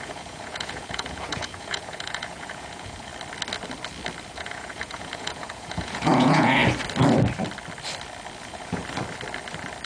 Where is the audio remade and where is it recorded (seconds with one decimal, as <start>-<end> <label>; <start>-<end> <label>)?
0.0-3.1 remade; 3.1-4.3 recorded; 4.3-6.6 remade; 6.6-8.4 recorded; 8.4-8.8 remade; 8.8-9.9 recorded